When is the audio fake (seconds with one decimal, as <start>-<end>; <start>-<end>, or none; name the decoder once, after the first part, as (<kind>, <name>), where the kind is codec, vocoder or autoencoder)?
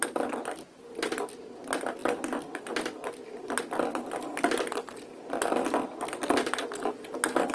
none